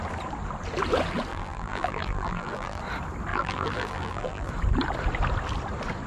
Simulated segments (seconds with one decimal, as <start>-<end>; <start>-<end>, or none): 1.3-2.8; 3.3-4.5